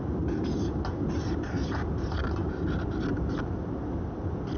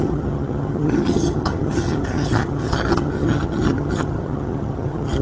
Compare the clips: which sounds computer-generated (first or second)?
second